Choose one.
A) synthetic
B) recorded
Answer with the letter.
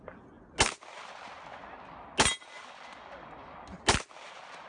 B